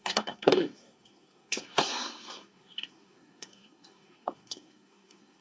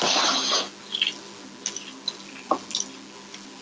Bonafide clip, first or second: second